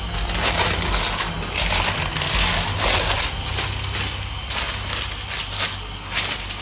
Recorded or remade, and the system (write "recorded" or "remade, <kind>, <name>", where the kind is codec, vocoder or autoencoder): recorded